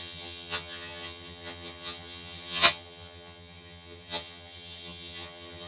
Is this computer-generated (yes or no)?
yes